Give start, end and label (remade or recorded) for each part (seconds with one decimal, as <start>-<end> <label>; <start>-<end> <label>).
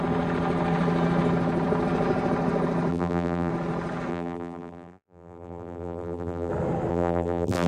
0.0-2.9 recorded; 2.9-3.5 remade; 3.5-4.1 recorded; 4.1-6.5 remade; 6.5-6.9 recorded; 6.9-7.7 remade